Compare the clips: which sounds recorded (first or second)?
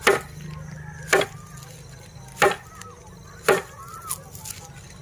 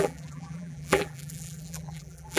first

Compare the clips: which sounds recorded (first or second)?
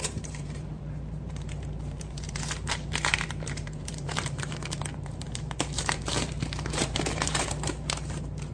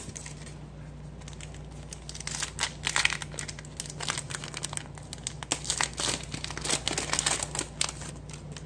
second